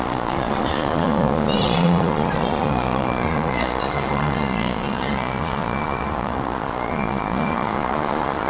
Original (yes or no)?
no